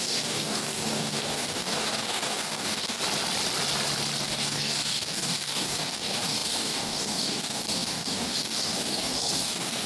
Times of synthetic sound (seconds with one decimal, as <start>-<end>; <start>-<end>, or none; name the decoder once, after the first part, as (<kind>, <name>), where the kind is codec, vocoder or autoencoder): 0.0-3.0 (codec, DAC); 4.2-9.9